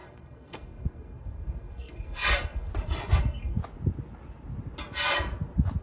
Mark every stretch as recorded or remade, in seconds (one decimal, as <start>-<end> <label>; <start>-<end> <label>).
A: 0.0-2.7 remade; 2.7-3.2 recorded; 3.2-3.6 remade; 3.6-5.8 recorded